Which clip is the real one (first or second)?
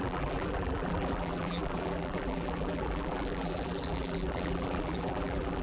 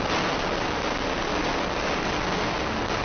second